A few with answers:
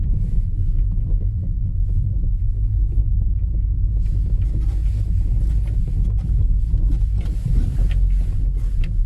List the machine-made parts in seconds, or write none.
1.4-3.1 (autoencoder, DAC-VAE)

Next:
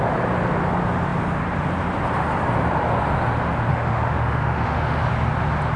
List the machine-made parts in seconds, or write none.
3.7-5.0 (autoencoder, DAC-VAE)